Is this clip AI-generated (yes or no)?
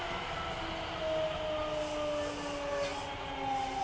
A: no